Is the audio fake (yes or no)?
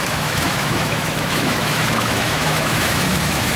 yes